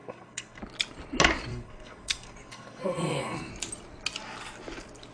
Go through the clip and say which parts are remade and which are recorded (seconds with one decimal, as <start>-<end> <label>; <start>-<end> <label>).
0.0-0.6 remade; 0.6-1.5 recorded; 1.5-3.5 remade; 3.5-5.1 recorded